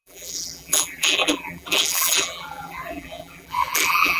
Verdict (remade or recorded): remade